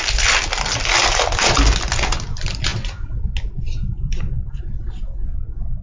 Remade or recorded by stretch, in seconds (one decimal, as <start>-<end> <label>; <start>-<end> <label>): 0.0-5.8 recorded